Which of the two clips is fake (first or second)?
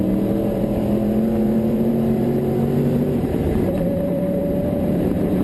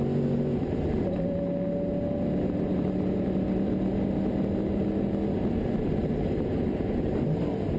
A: first